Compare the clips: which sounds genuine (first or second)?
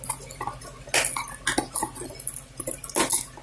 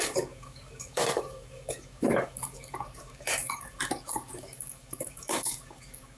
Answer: first